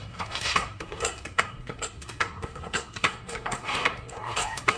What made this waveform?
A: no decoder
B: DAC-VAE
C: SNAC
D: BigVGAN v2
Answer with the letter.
C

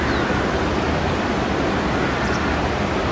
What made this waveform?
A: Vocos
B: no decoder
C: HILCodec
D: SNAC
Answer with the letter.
B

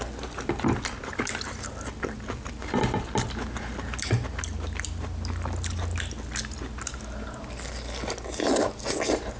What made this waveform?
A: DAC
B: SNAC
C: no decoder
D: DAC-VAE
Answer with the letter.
C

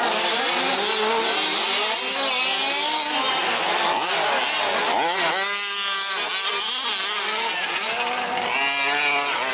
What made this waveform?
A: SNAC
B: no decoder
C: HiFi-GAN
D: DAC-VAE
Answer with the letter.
B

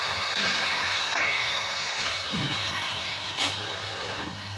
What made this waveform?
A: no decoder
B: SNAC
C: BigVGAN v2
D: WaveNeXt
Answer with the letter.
B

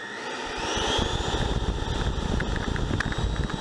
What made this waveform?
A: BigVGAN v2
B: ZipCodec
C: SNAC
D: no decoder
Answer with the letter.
D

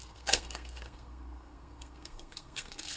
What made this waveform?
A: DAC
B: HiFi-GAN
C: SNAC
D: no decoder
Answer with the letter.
C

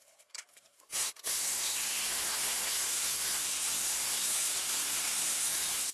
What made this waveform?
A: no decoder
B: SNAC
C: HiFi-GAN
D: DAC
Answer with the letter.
B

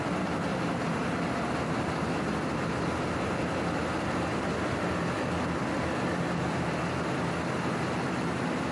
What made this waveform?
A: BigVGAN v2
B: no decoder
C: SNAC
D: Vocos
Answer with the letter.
B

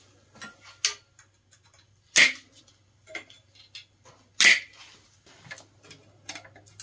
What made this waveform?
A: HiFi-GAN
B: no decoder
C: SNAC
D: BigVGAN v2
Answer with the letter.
B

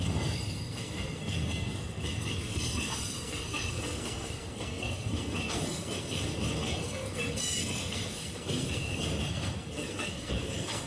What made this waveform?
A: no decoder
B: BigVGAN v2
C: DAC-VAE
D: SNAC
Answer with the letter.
D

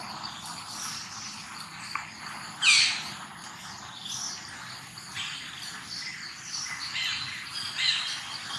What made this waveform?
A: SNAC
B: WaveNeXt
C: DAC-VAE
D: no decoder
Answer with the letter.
D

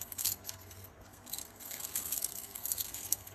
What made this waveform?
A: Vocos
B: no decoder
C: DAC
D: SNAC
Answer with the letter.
D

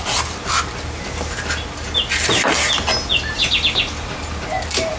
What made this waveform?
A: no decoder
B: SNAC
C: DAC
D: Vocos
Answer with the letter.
A